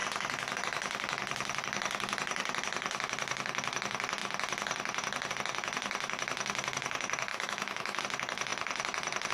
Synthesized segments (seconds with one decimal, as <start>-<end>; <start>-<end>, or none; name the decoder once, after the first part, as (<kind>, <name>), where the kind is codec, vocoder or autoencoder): 7.3-8.0 (autoencoder, DAC-VAE)

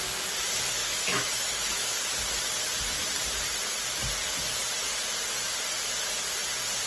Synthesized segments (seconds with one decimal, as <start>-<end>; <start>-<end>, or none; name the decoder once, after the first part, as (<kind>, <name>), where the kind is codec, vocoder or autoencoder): 0.8-2.0 (autoencoder, DAC-VAE)

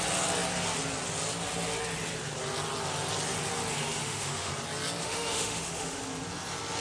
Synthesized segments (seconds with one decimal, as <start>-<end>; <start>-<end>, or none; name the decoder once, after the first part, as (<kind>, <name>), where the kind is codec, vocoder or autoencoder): 4.0-4.5 (autoencoder, DAC-VAE); 5.0-6.0

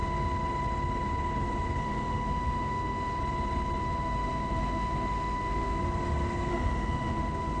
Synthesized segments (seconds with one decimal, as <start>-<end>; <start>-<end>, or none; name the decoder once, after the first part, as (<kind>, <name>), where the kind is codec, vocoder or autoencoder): 1.8-3.2 (autoencoder, DAC-VAE); 3.8-5.8; 6.5-7.6

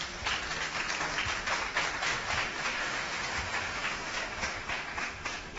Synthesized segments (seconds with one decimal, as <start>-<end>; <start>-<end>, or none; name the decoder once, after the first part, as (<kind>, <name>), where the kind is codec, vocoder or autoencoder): 2.1-5.6 (autoencoder, DAC-VAE)